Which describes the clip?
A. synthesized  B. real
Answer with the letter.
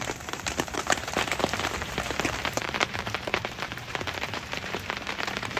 A